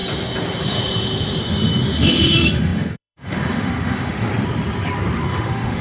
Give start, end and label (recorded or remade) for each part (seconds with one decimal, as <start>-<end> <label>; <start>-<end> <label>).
0.0-1.4 recorded; 1.4-4.3 remade; 4.3-5.2 recorded; 5.2-5.8 remade